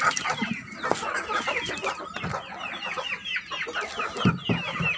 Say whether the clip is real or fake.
real